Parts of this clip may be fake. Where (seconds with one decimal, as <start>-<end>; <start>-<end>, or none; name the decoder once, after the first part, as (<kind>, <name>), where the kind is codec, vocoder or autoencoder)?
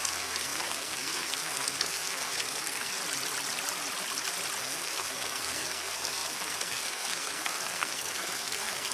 0.0-3.0 (codec, SNAC); 4.6-8.9